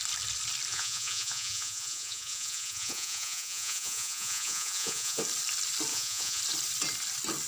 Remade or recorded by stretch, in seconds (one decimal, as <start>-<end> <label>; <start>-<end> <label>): 0.0-0.7 recorded; 0.7-5.2 remade; 5.2-5.9 recorded; 5.9-6.4 remade; 6.4-7.5 recorded